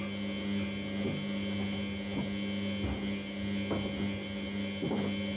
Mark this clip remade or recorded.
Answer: recorded